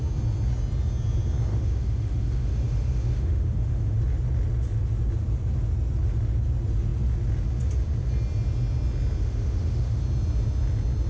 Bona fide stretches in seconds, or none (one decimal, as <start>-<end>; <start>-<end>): 0.0-1.5; 4.0-9.2; 10.0-11.1